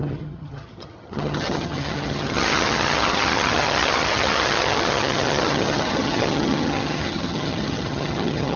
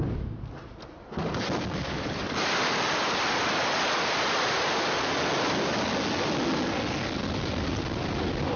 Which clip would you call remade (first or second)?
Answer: first